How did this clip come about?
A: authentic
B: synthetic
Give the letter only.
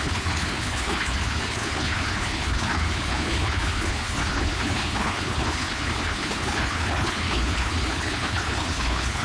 B